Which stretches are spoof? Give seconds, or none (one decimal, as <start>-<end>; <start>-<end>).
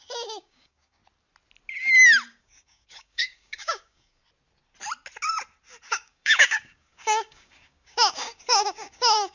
0.0-1.0; 2.4-4.2; 5.9-9.3